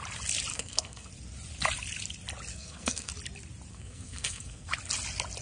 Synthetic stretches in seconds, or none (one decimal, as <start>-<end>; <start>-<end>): 0.5-1.1; 2.5-3.1; 3.7-4.7